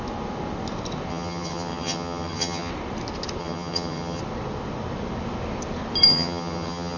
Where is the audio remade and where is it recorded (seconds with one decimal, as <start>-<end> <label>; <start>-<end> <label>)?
0.0-1.1 recorded; 1.1-2.7 remade; 2.7-3.4 recorded; 3.4-4.2 remade; 4.2-6.1 recorded; 6.1-7.0 remade